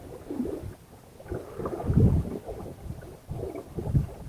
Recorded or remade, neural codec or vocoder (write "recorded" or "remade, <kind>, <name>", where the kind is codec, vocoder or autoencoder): recorded